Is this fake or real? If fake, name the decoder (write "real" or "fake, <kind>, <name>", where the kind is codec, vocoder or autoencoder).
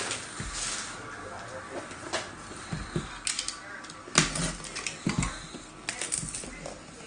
real